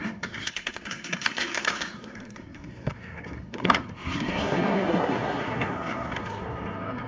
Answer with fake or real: fake